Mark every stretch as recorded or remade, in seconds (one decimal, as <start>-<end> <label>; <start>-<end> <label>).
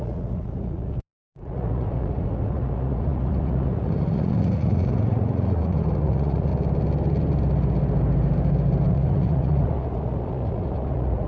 0.0-6.5 remade; 6.5-8.9 recorded; 8.9-11.3 remade